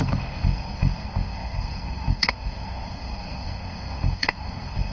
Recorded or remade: remade